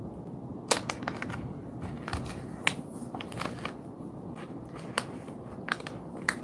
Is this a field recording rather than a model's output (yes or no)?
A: yes